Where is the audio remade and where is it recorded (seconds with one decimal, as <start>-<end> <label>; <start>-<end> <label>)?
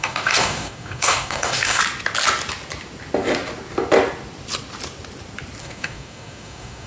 0.0-1.8 remade; 1.8-5.6 recorded; 5.6-6.9 remade